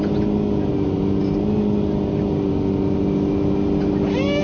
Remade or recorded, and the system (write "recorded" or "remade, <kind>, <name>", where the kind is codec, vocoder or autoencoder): recorded